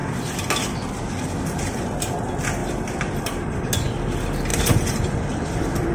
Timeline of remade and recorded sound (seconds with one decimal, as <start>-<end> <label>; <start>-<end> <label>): 0.0-2.6 recorded; 2.6-3.7 remade; 3.7-4.5 recorded; 4.5-5.9 remade